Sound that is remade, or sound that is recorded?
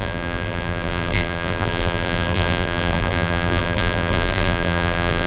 remade